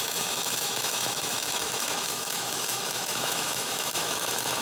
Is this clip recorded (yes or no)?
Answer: no